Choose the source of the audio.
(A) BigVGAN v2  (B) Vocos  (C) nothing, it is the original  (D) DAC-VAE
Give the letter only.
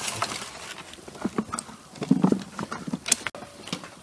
C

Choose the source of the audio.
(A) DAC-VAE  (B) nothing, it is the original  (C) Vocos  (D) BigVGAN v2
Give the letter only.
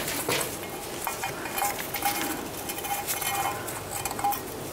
B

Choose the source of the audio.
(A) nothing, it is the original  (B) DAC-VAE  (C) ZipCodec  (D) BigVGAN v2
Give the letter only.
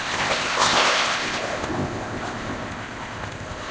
C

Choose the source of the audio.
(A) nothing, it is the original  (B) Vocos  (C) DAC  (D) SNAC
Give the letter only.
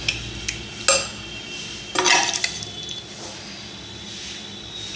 A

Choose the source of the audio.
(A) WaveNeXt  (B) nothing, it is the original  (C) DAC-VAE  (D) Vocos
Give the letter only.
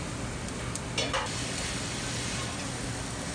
B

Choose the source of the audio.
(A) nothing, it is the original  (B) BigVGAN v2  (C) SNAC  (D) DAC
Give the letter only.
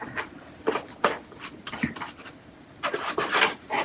A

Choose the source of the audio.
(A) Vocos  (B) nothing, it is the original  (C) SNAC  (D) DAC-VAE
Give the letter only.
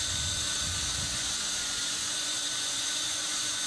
A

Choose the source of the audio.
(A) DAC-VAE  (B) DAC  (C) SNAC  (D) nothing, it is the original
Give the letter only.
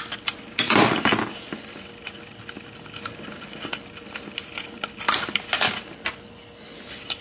D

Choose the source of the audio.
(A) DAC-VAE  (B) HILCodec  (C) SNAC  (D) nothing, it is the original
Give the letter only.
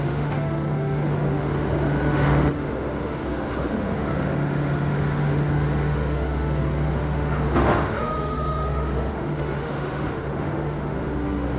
A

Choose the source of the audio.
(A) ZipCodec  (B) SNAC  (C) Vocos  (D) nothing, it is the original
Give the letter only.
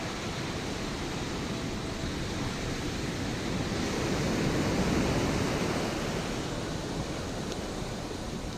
D